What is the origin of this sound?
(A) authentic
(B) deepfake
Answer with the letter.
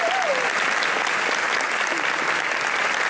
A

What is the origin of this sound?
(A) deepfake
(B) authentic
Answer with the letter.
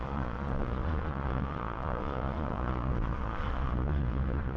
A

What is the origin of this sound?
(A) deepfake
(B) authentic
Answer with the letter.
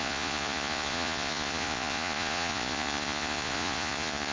A